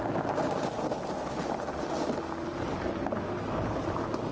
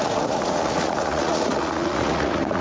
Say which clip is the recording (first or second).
first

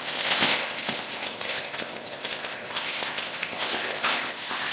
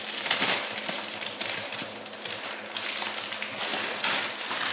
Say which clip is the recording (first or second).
second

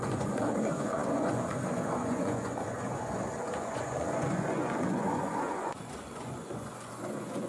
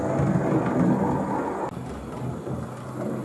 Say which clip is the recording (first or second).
second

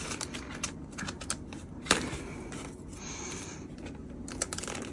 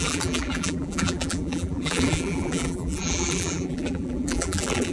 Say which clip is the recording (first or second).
first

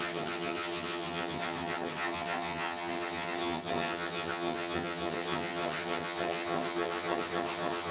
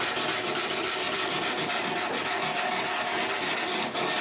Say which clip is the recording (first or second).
second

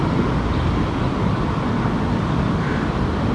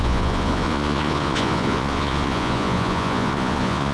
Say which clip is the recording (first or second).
first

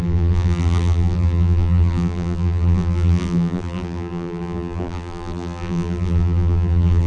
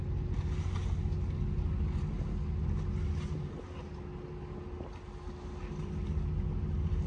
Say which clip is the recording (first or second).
second